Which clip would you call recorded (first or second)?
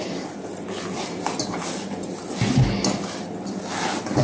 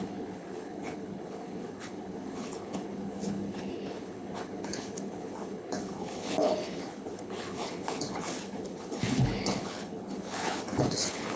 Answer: first